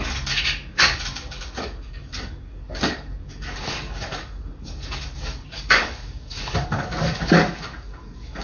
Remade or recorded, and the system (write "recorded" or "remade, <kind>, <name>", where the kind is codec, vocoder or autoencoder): remade, codec, DAC